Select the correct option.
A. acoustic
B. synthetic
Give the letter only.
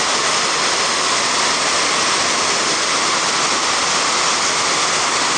A